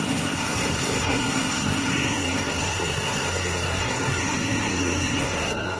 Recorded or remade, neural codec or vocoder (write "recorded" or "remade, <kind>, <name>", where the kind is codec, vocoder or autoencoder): remade, codec, SNAC